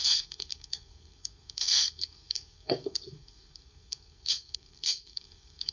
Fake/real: fake